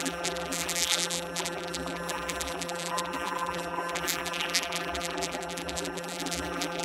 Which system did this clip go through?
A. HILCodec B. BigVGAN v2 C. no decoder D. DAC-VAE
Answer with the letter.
B